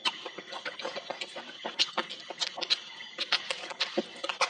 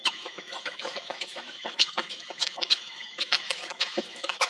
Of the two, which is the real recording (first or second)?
first